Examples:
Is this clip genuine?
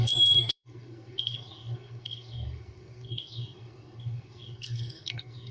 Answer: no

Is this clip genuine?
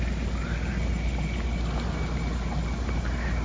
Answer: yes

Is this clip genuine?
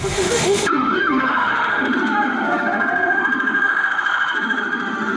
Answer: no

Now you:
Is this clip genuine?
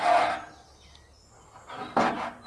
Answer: yes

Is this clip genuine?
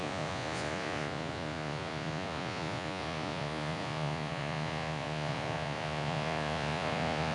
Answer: no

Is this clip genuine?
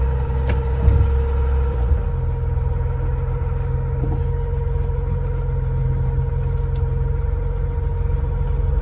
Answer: yes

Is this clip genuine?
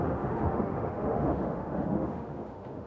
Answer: no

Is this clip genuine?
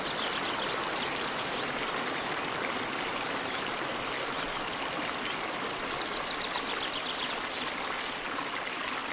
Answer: yes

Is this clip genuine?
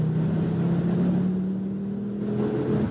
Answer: yes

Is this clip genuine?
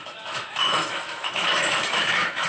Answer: no